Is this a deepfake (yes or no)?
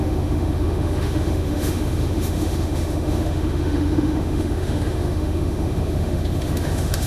yes